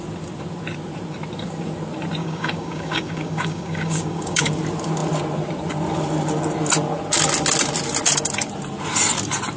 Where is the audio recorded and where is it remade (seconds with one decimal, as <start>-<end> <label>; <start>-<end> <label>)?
0.0-2.2 recorded; 2.2-4.5 remade; 4.5-9.6 recorded